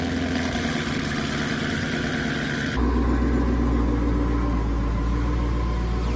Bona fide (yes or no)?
yes